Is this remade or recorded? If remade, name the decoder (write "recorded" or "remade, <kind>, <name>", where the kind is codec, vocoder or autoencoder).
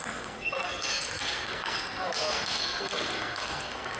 remade, codec, SNAC